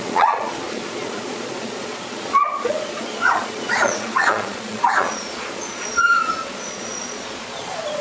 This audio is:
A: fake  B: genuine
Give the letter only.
A